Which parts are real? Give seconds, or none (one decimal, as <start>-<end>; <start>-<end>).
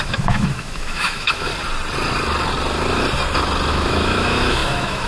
1.5-3.7